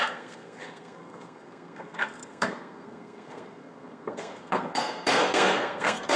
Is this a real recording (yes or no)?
no